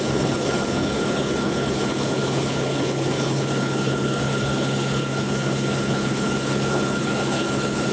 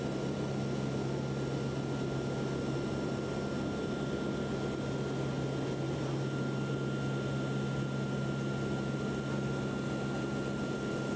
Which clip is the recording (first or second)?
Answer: second